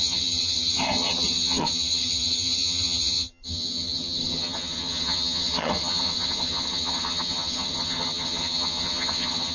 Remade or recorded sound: remade